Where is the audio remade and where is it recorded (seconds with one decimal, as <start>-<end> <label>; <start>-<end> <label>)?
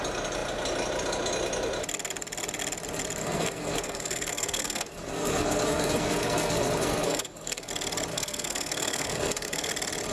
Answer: 0.0-3.2 recorded; 3.2-7.7 remade; 7.7-8.1 recorded; 8.1-9.7 remade; 9.7-10.1 recorded